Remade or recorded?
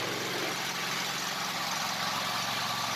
recorded